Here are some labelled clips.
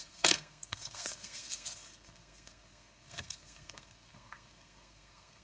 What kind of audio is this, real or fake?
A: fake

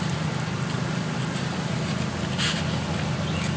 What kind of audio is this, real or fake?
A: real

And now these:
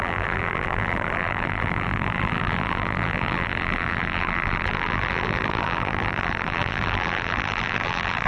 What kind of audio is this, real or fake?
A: fake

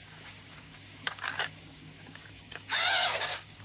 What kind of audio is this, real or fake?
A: fake